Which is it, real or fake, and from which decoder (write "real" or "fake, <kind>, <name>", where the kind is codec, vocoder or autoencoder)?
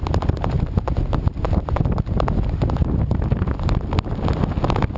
real